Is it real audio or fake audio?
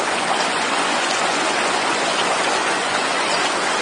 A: fake